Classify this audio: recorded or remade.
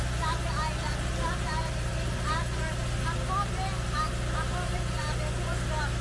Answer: recorded